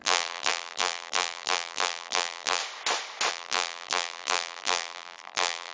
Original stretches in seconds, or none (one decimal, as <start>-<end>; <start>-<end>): 2.6-3.3